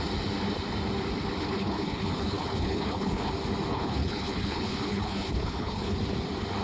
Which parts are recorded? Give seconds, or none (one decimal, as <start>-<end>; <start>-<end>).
0.0-1.4; 3.3-3.7; 6.0-6.6